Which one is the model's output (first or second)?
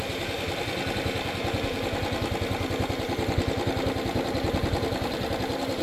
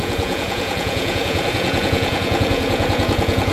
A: second